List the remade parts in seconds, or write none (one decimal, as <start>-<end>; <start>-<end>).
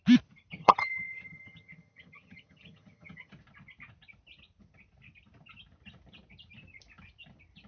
0.6-3.3